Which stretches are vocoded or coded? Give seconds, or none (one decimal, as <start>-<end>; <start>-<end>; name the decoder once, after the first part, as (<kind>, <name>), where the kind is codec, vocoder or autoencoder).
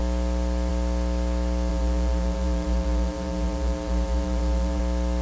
1.7-4.8 (vocoder, BigVGAN v2)